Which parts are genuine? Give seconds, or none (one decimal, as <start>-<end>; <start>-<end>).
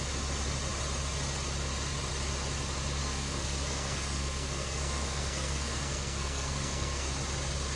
0.0-3.0; 7.1-7.8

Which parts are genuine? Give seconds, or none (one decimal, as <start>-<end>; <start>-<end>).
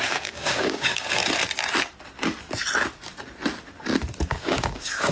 1.2-4.3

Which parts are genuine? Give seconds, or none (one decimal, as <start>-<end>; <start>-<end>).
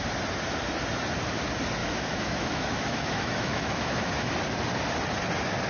0.0-1.8; 4.3-5.7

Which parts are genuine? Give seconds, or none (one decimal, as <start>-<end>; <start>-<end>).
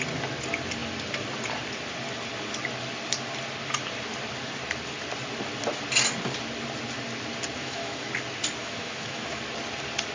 0.0-7.6; 8.1-8.6; 9.4-10.1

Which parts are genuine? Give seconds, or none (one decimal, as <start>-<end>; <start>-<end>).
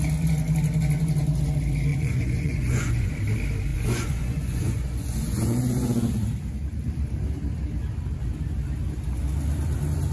0.0-1.9; 3.1-3.7; 6.1-10.1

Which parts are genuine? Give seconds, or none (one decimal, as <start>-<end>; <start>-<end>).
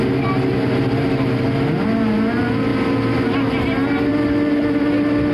0.0-5.3